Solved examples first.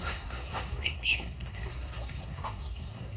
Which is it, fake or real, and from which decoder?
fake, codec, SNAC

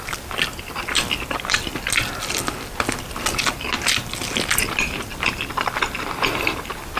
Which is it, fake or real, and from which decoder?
real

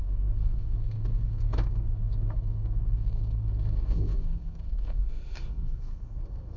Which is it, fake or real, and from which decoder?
fake, codec, SNAC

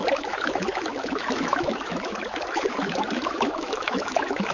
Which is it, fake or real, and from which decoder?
fake, autoencoder, DAC-VAE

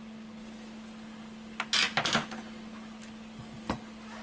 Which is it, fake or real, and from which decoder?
real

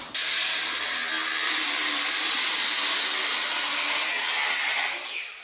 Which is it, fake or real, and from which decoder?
real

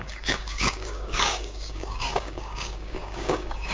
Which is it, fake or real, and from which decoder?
fake, codec, DAC